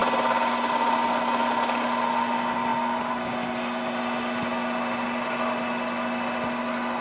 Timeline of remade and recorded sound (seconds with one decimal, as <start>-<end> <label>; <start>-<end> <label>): 0.0-7.0 recorded